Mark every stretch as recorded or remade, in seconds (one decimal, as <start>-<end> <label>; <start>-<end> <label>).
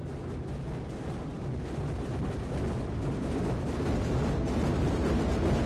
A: 0.0-5.7 recorded